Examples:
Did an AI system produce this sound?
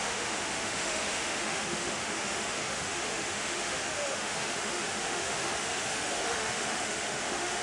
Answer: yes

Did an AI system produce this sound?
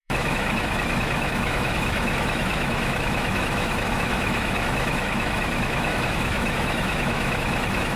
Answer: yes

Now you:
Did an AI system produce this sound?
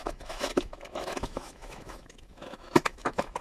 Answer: yes